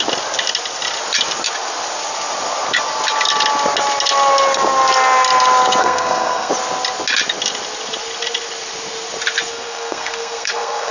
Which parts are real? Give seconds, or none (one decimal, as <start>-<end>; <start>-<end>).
0.0-5.8; 6.5-9.5